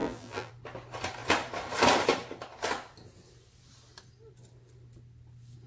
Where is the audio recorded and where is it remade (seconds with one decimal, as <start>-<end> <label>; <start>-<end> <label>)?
0.0-0.5 remade; 0.5-5.7 recorded